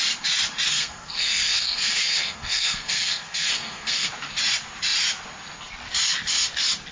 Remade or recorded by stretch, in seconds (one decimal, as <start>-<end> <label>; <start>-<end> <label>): 0.0-0.7 recorded; 0.7-4.1 remade; 4.1-6.9 recorded